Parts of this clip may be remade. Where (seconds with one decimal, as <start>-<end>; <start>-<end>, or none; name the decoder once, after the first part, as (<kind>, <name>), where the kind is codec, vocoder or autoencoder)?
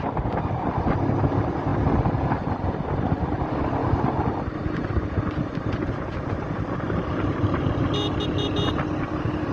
none